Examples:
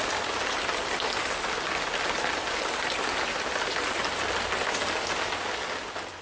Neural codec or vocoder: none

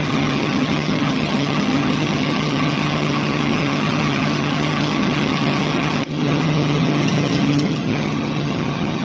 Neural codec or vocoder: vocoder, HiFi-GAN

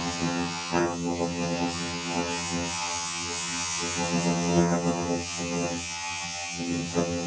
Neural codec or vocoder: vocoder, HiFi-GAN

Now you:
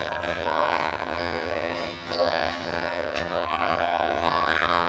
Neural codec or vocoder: vocoder, HiFi-GAN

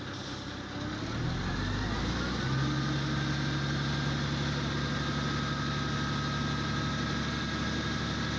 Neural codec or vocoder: none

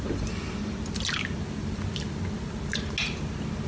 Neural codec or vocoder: none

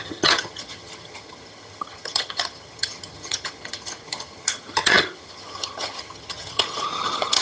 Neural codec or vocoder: vocoder, HiFi-GAN